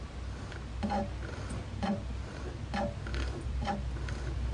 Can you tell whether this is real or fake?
fake